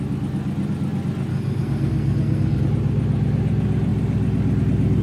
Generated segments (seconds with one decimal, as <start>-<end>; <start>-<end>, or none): 1.3-2.6